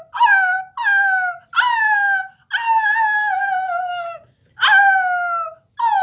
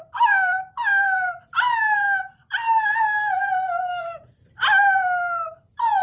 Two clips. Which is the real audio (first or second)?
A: first